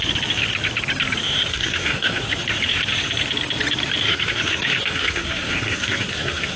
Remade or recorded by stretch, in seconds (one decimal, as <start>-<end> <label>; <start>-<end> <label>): 0.0-1.5 recorded; 1.5-2.2 remade; 2.2-4.1 recorded; 4.1-6.6 remade